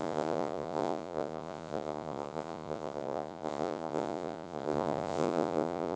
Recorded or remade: remade